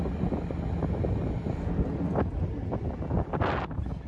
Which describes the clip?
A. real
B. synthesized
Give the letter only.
A